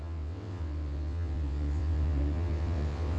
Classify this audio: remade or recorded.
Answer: remade